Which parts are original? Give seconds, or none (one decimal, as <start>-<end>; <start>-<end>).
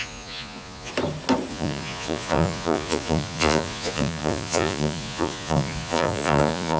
0.9-1.5